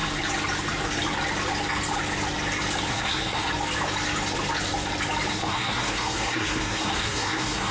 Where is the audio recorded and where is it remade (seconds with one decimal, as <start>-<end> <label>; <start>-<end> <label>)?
0.0-2.9 recorded; 2.9-3.5 remade; 3.5-5.3 recorded; 5.3-7.7 remade